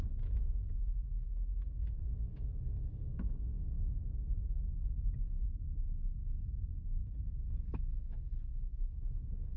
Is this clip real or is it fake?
fake